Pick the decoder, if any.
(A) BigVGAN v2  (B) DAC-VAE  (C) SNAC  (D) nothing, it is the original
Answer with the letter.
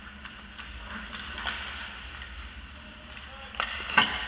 D